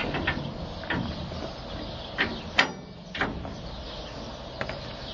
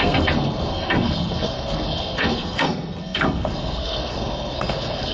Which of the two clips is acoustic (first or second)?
first